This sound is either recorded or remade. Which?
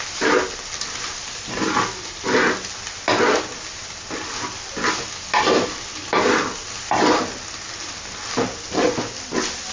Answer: recorded